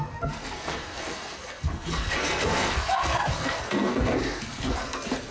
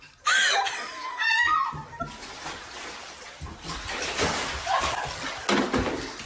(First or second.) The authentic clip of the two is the second